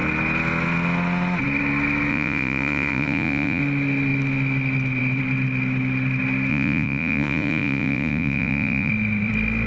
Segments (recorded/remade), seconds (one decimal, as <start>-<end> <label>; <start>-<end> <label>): 0.0-2.1 recorded; 2.1-3.6 remade; 3.6-6.5 recorded; 6.5-8.9 remade; 8.9-9.7 recorded